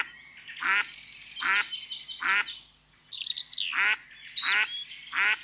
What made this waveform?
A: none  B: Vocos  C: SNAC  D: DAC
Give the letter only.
A